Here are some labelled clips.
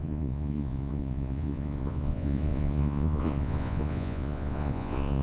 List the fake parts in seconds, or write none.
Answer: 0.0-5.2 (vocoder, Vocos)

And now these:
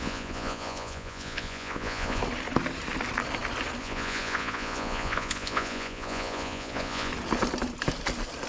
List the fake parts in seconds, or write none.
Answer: 0.0-2.2 (vocoder, Vocos); 3.8-7.1

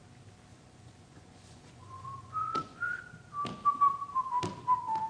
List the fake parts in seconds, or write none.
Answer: 0.5-3.0 (vocoder, Vocos)

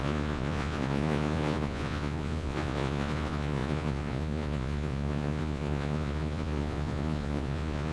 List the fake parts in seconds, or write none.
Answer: 0.0-7.9 (vocoder, Vocos)

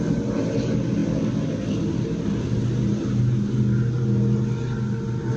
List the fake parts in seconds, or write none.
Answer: none